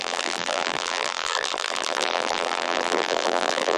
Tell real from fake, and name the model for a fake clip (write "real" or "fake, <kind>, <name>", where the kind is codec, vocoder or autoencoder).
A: fake, vocoder, BigVGAN v2